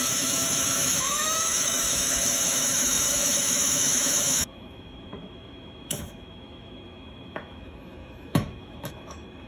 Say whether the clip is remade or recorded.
remade